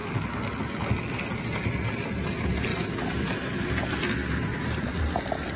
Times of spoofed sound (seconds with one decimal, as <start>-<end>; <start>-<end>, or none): 2.7-3.8; 4.5-5.0